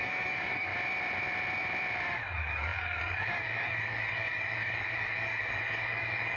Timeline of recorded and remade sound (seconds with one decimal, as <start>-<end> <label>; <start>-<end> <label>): 0.0-0.7 remade; 0.7-2.1 recorded; 2.1-6.4 remade